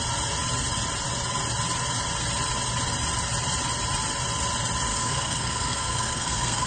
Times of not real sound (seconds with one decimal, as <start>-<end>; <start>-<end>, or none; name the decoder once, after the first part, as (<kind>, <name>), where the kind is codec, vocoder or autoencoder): 4.9-6.7 (codec, SNAC)